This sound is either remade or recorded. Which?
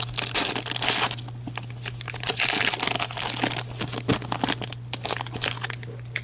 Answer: recorded